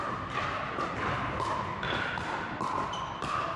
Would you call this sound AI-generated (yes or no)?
no